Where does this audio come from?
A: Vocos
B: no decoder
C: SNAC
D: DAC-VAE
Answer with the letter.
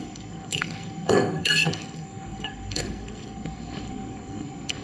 C